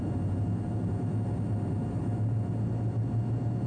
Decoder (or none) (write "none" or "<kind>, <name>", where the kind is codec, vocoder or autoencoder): none